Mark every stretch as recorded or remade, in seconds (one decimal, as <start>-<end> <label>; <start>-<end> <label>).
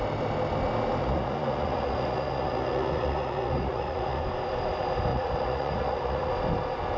0.0-1.0 recorded; 1.0-4.2 remade; 4.2-5.1 recorded; 5.1-6.3 remade; 6.3-7.0 recorded